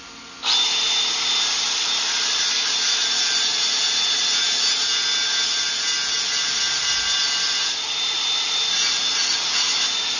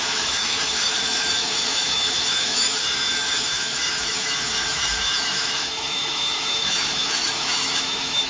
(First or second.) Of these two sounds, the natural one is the first